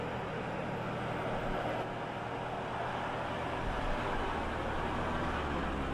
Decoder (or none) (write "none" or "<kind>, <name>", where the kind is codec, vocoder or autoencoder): none